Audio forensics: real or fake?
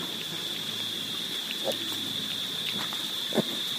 fake